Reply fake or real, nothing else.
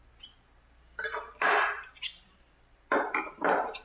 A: fake